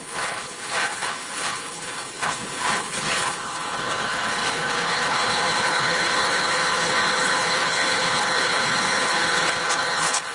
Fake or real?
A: fake